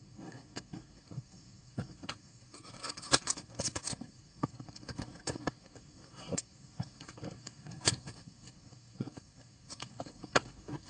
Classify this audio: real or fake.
fake